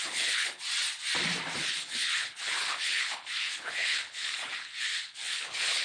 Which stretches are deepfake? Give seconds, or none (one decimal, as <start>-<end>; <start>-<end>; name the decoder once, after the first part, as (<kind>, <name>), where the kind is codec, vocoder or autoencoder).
0.0-0.6 (codec, HILCodec); 1.6-5.8